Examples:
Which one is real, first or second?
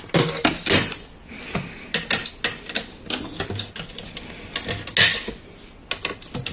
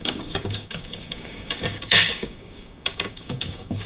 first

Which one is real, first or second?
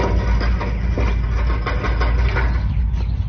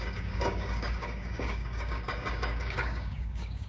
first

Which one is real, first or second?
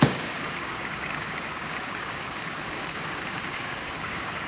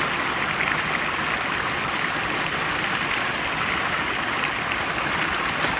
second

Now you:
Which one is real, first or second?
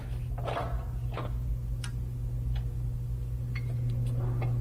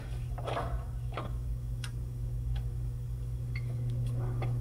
first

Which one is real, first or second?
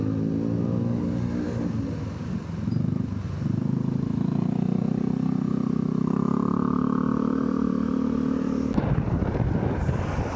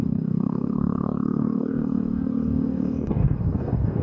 first